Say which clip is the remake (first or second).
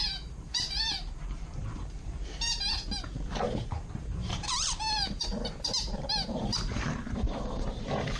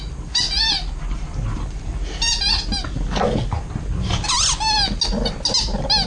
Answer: first